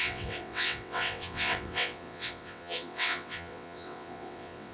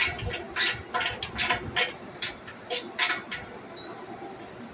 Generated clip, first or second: first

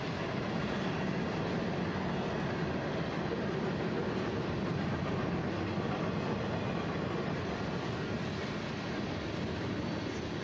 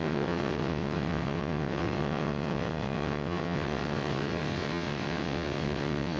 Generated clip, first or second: second